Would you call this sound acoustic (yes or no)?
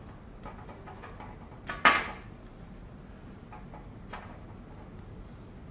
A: yes